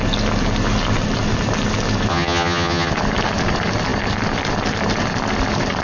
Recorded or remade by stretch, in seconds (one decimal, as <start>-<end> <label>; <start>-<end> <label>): 0.0-2.1 recorded; 2.1-2.9 remade; 2.9-5.8 recorded